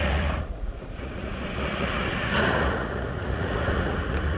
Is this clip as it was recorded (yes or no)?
no